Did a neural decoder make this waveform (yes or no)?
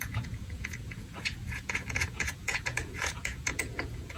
yes